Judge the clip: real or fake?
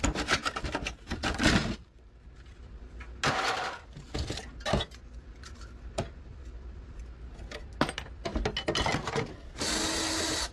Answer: real